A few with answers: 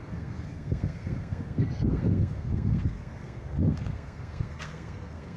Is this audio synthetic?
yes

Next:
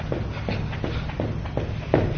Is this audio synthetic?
no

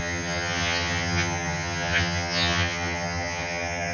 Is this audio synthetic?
yes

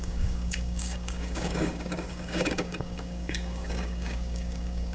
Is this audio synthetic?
yes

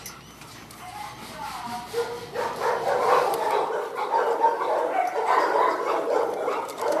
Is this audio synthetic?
no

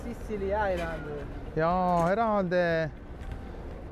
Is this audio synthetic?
no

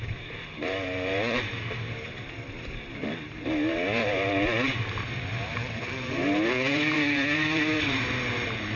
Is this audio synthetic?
yes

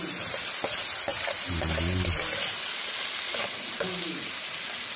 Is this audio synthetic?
no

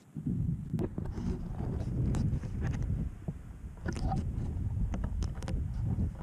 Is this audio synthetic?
no